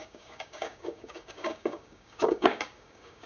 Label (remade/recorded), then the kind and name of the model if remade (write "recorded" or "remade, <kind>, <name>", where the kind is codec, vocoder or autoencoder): remade, codec, DAC